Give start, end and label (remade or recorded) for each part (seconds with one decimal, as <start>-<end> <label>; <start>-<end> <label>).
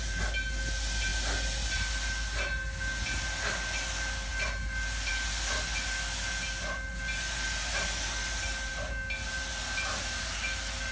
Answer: 0.0-10.9 recorded